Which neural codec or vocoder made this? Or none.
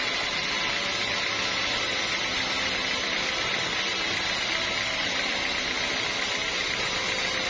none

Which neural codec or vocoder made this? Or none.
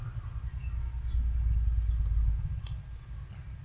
none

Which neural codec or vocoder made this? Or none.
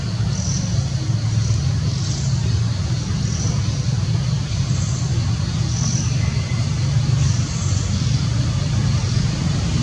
none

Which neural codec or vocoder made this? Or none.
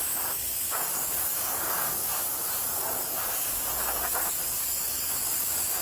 codec, DAC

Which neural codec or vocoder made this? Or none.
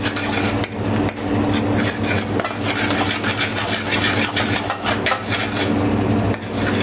none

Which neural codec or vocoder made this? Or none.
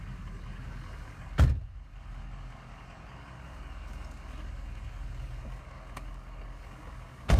codec, DAC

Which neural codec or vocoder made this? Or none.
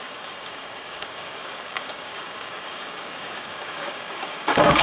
codec, DAC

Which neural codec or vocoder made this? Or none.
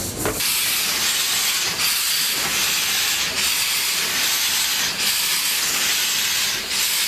none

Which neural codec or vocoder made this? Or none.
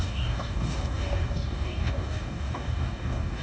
codec, DAC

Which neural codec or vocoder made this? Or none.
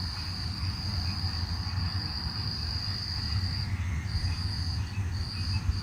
none